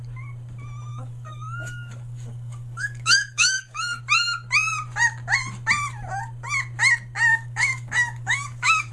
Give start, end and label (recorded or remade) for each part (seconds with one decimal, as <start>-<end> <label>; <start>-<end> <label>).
0.0-0.9 recorded; 0.9-4.0 remade; 4.0-7.3 recorded; 7.3-8.9 remade